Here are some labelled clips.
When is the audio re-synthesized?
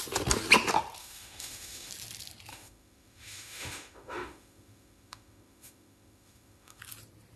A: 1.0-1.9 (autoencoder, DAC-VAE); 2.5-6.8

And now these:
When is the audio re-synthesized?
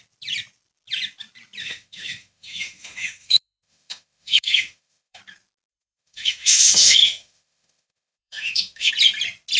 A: 1.6-5.2 (autoencoder, DAC-VAE); 5.7-8.9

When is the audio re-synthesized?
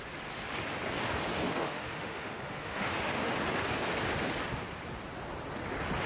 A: 1.3-3.3 (autoencoder, DAC-VAE)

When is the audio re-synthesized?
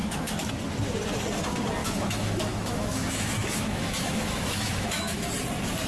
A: 0.0-0.5 (autoencoder, DAC-VAE); 1.8-5.3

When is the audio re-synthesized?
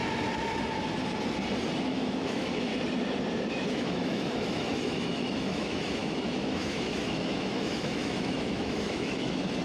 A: 1.8-2.7 (autoencoder, DAC-VAE); 3.5-9.6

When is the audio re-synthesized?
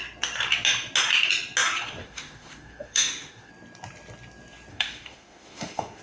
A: 2.0-3.5 (autoencoder, DAC-VAE); 4.7-6.0